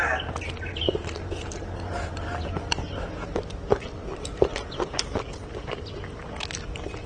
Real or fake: real